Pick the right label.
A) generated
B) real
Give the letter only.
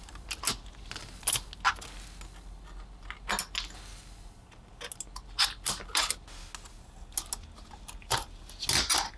B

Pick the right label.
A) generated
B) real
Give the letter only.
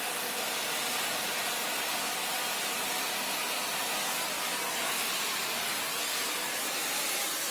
B